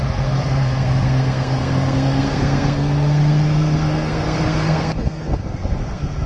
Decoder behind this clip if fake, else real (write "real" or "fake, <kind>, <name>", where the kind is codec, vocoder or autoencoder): fake, codec, SNAC